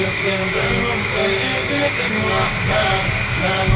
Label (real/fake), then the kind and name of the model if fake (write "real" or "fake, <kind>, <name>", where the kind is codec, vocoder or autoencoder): fake, codec, DAC